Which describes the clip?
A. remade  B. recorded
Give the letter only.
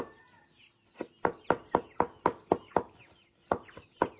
B